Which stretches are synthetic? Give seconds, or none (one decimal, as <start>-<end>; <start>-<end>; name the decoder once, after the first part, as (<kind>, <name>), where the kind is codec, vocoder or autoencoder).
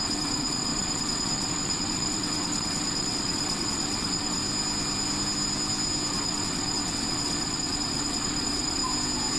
0.0-4.4 (vocoder, WaveNeXt); 6.1-8.8